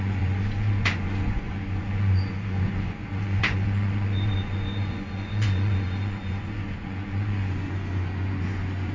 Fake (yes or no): yes